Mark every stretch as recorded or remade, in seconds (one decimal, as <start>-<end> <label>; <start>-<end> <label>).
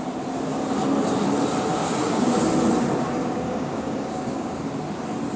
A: 0.0-1.7 recorded; 1.7-2.4 remade; 2.4-3.2 recorded; 3.2-4.6 remade; 4.6-5.4 recorded